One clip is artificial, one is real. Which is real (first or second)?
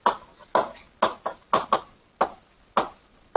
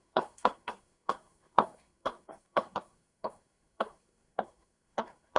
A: first